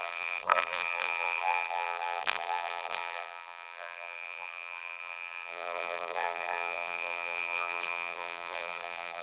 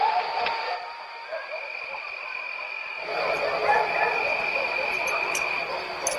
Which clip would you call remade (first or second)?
first